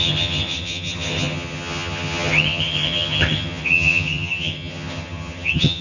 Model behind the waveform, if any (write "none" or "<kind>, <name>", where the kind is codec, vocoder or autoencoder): vocoder, HiFi-GAN